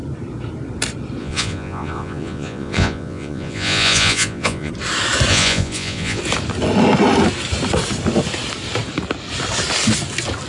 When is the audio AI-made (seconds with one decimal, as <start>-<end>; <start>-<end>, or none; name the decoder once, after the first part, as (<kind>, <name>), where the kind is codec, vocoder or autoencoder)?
1.2-4.7 (vocoder, Vocos); 5.3-6.2